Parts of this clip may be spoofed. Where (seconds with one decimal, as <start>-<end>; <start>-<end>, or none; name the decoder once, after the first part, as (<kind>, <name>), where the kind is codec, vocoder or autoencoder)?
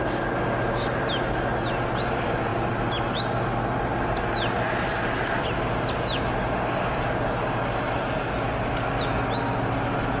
none